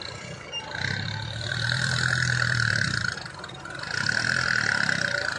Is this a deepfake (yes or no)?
yes